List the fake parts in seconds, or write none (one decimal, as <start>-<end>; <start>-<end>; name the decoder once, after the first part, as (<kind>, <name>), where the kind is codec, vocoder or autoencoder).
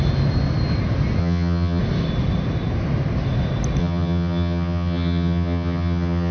1.2-1.8 (vocoder, HiFi-GAN); 3.8-6.3